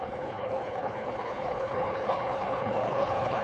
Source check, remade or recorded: remade